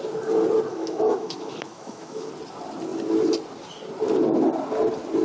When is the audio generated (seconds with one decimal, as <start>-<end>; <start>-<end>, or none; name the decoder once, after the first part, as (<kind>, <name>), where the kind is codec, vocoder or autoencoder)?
0.7-2.3 (autoencoder, DAC-VAE)